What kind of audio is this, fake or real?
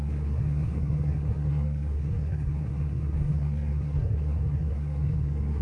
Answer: fake